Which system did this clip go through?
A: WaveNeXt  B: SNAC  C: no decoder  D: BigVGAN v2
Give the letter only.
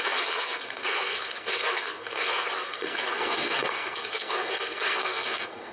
B